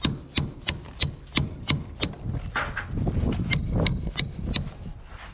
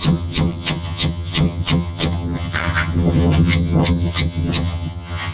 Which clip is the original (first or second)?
first